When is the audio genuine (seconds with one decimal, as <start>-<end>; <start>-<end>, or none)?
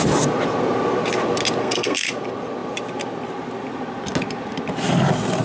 0.0-1.6; 2.1-5.4